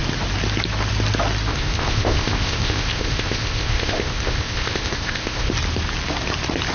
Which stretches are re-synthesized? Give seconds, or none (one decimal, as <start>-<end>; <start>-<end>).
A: 1.5-5.5